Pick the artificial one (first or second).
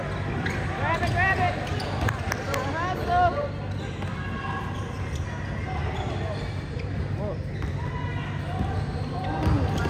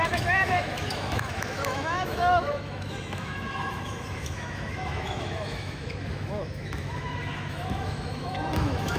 second